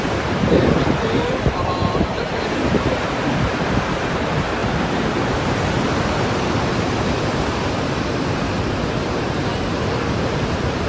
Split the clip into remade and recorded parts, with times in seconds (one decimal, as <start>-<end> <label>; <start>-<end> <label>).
0.0-4.6 remade; 4.6-5.9 recorded; 5.9-10.9 remade